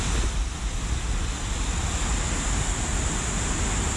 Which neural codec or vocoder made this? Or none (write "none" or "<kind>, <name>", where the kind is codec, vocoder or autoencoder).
none